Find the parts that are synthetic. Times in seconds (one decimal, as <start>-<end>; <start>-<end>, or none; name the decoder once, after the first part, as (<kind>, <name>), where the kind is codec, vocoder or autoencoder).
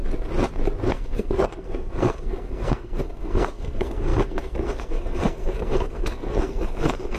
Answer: 0.9-7.2 (codec, SNAC)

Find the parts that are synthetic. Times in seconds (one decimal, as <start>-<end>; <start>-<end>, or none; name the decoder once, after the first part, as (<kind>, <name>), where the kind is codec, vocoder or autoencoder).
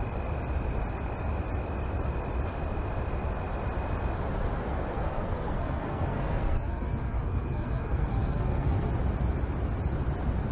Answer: 4.6-8.9 (codec, SNAC)